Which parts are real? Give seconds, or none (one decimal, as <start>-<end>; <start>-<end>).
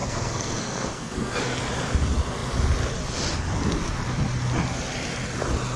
1.6-5.8